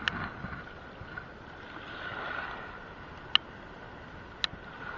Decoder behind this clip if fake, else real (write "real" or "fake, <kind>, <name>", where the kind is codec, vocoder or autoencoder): real